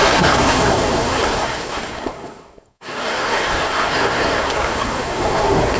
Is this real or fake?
fake